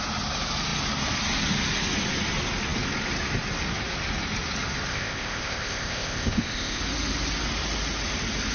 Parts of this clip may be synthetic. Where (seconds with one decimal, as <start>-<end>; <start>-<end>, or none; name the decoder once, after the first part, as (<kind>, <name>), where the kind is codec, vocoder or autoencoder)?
4.9-6.8 (codec, ZipCodec)